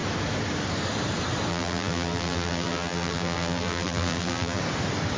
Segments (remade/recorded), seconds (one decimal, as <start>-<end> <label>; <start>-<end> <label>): 0.0-1.5 recorded; 1.5-4.6 remade; 4.6-5.2 recorded